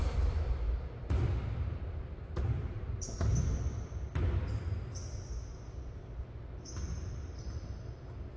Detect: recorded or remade recorded